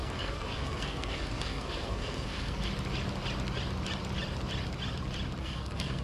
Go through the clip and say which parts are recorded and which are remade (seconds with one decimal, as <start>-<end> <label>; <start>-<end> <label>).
0.0-2.7 remade; 2.7-5.4 recorded; 5.4-6.0 remade

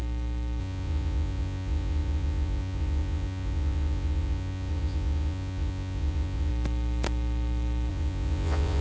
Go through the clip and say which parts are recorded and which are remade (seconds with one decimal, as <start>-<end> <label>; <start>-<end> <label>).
0.0-0.6 recorded; 0.6-6.5 remade; 6.5-7.9 recorded; 7.9-8.8 remade

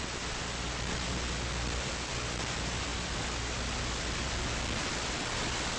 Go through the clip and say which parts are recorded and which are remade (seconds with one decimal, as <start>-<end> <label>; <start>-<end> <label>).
0.0-5.8 recorded

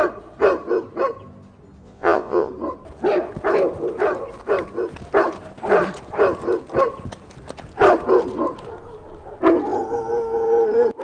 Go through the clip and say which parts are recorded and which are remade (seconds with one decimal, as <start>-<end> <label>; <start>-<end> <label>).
0.0-1.8 recorded; 1.8-2.5 remade; 2.5-11.0 recorded